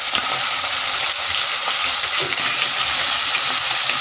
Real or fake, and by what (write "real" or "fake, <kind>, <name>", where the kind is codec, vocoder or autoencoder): real